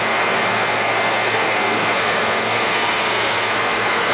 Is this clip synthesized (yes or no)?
yes